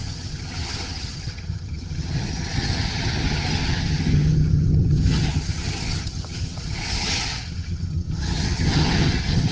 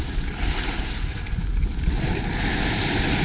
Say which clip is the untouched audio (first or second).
second